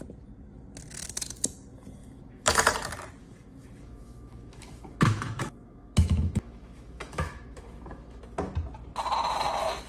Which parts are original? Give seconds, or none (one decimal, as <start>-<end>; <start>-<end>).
0.0-2.0; 2.7-3.2; 8.2-9.9